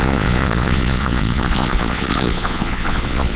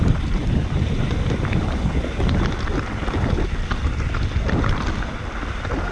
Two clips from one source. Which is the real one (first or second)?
second